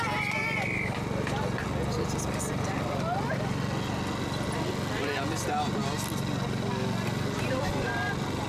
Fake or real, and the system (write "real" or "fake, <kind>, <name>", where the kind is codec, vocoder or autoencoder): real